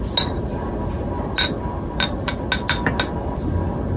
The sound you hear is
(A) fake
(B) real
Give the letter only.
B